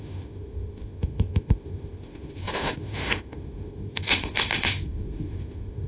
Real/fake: fake